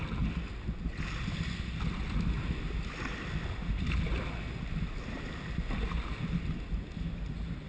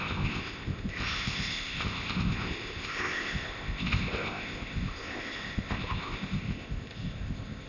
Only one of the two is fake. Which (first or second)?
second